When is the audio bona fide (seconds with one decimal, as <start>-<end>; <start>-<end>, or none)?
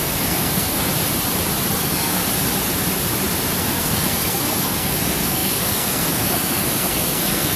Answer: 0.9-1.7; 2.2-3.6